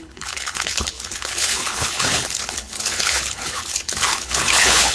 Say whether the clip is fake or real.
fake